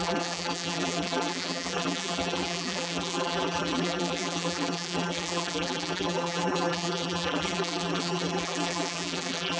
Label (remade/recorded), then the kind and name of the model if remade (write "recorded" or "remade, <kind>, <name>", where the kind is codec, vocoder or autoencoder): remade, vocoder, BigVGAN v2